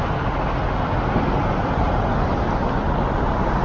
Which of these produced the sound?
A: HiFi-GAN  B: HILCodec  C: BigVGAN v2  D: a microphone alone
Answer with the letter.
D